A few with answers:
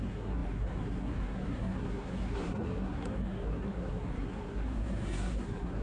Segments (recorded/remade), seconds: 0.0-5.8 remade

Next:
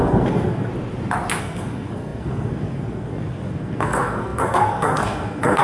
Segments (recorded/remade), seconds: 0.0-0.7 remade; 0.7-1.4 recorded; 1.4-5.6 remade

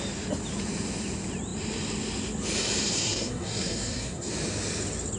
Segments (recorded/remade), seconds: 0.0-2.9 recorded; 2.9-4.3 remade; 4.3-5.2 recorded

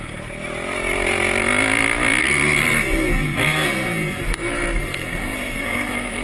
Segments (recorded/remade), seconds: 0.0-2.2 recorded; 2.2-6.2 remade

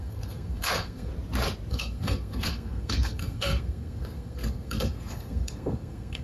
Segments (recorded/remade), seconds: 0.0-1.1 remade; 1.1-1.7 recorded; 1.7-6.2 remade

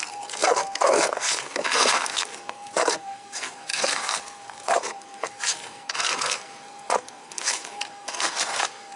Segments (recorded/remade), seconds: 0.0-9.0 remade